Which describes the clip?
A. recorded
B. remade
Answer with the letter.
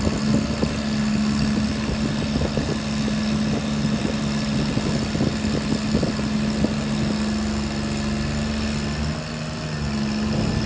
A